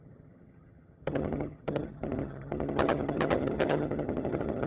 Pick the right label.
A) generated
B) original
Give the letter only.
A